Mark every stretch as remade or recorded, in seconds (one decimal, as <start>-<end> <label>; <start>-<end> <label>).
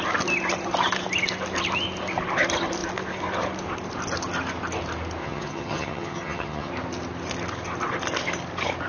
0.0-5.2 recorded; 5.2-6.7 remade; 6.7-8.9 recorded